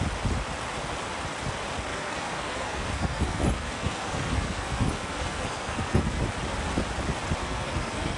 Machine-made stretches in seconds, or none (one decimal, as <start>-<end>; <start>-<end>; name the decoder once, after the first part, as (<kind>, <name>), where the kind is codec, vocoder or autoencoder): 1.9-6.2 (codec, SNAC); 7.4-8.2